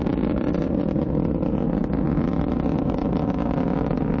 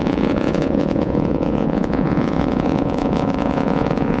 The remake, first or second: second